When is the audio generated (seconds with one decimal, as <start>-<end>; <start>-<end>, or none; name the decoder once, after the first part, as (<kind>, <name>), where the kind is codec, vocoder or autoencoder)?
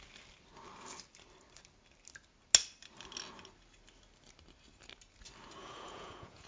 5.6-6.5 (vocoder, Vocos)